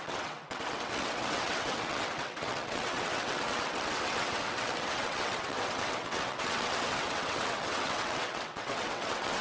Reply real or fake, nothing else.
fake